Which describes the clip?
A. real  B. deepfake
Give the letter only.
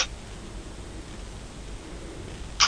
A